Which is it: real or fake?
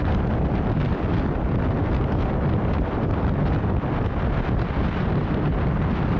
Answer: real